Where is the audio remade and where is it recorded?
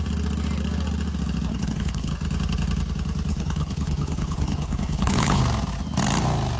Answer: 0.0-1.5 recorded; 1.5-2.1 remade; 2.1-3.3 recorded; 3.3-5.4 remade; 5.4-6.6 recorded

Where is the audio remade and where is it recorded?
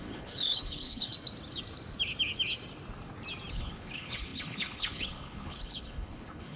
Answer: 0.0-1.1 remade; 1.1-3.5 recorded; 3.5-6.6 remade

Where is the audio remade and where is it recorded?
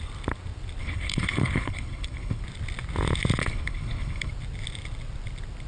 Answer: 0.0-0.8 recorded; 0.8-2.4 remade; 2.4-3.4 recorded; 3.4-4.3 remade; 4.3-5.7 recorded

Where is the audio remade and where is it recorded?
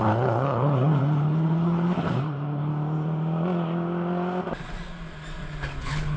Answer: 0.0-2.7 remade; 2.7-5.8 recorded; 5.8-6.2 remade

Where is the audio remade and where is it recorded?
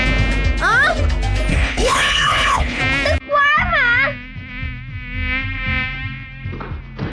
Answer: 0.0-1.5 recorded; 1.5-2.8 remade; 2.8-7.1 recorded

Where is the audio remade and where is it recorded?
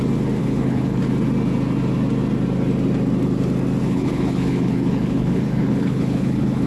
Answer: 0.0-0.4 recorded; 0.4-1.0 remade; 1.0-3.8 recorded; 3.8-6.7 remade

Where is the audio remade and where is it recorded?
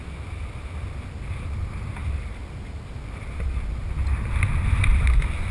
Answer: 0.0-5.5 recorded